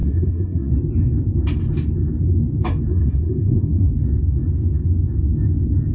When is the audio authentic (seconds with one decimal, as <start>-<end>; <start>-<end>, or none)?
0.7-2.9; 3.9-5.9